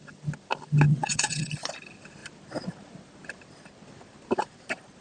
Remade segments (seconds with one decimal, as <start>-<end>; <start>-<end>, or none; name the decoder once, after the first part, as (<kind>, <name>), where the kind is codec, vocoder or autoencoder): 0.9-1.5 (vocoder, WaveNeXt)